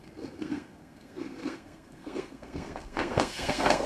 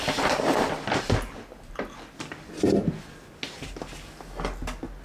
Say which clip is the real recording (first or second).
second